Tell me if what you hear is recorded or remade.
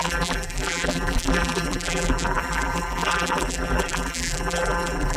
remade